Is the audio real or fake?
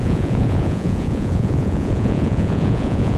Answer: fake